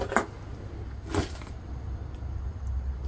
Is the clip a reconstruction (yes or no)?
no